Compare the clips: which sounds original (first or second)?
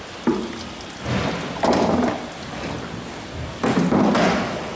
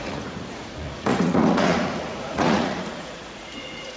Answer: first